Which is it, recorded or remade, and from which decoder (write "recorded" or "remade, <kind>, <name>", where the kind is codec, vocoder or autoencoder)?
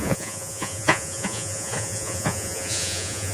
remade, vocoder, Vocos